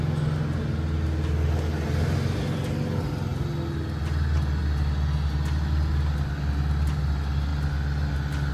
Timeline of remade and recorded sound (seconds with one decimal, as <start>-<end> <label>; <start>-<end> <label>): 0.0-8.5 recorded